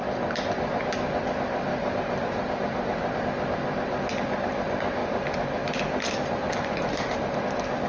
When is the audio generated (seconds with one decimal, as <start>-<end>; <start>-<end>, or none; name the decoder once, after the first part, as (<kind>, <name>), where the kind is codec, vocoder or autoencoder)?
1.7-3.2 (vocoder, BigVGAN v2); 5.0-7.4